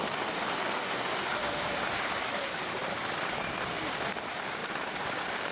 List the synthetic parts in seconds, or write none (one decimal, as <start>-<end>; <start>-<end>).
1.4-3.0; 4.6-5.5